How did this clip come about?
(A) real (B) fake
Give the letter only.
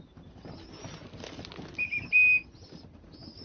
A